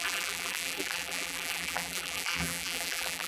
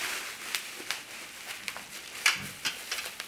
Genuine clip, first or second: second